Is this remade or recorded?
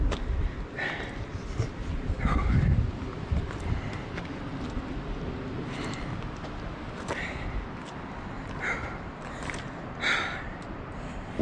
recorded